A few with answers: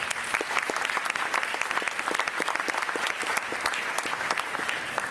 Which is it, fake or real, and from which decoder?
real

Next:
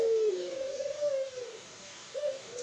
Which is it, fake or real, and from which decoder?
fake, codec, DAC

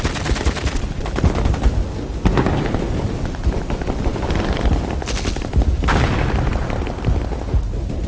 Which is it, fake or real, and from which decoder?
real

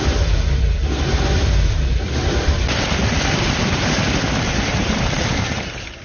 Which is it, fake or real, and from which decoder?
fake, vocoder, BigVGAN v2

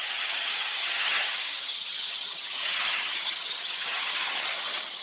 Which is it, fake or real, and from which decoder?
fake, vocoder, HiFi-GAN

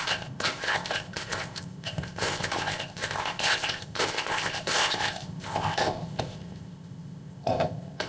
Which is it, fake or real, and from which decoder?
fake, codec, ZipCodec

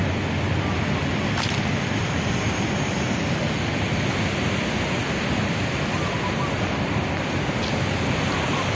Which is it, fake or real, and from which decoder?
real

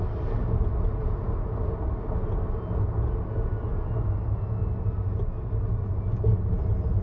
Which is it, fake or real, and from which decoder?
real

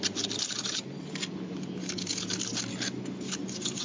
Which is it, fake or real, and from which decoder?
real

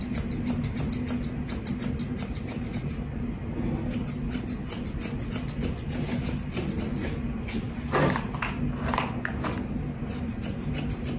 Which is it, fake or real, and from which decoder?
real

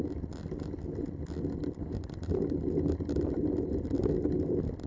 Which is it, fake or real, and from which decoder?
real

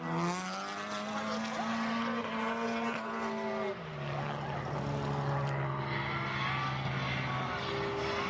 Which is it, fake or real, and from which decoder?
real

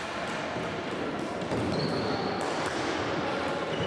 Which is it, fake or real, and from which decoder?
real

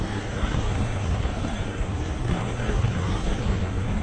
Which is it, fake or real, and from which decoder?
fake, codec, SNAC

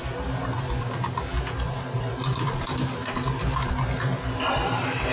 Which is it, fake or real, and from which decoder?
real